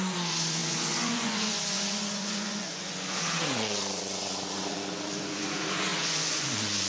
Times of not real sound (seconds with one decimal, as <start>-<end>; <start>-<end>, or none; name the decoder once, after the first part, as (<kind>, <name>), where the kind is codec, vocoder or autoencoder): 0.0-6.9 (vocoder, Vocos)